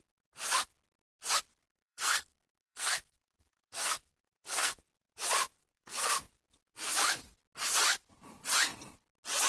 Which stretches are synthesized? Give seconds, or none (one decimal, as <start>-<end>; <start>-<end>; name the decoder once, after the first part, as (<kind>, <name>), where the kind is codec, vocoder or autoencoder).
1.6-4.8 (codec, SNAC); 5.6-6.2

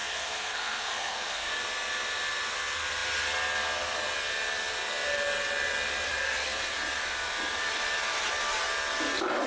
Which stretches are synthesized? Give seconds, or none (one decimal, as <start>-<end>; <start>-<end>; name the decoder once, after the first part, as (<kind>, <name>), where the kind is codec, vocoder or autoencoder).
0.0-1.5 (codec, SNAC)

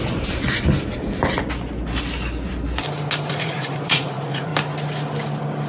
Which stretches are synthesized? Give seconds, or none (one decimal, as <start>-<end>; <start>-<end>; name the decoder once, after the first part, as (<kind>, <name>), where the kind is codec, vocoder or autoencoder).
3.4-4.5 (vocoder, Vocos)

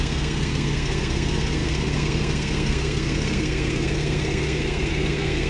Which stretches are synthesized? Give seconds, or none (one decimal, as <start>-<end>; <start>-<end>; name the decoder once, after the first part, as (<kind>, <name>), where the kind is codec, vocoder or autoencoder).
0.0-5.5 (codec, SNAC)

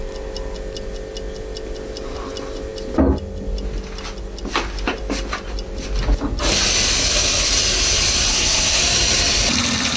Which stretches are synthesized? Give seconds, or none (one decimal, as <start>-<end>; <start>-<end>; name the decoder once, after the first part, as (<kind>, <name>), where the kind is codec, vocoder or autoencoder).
8.3-8.8 (codec, SNAC)

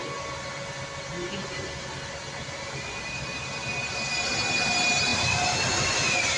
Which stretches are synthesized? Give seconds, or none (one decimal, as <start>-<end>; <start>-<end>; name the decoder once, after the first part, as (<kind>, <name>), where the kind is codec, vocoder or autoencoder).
none